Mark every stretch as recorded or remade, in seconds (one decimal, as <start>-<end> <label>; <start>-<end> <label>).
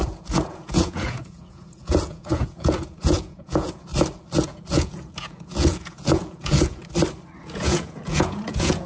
0.0-3.9 remade; 3.9-4.4 recorded; 4.4-6.8 remade; 6.8-7.4 recorded; 7.4-8.9 remade